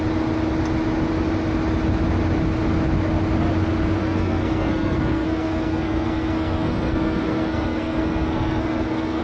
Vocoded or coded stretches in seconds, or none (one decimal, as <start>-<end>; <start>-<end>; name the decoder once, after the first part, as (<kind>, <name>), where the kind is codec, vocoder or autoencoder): 4.0-9.2 (codec, SNAC)